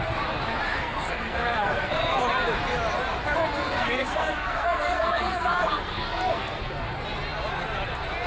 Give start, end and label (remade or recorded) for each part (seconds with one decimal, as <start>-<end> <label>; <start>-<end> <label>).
0.0-0.7 recorded; 0.7-2.2 remade; 2.2-3.6 recorded; 3.6-6.7 remade; 6.7-8.3 recorded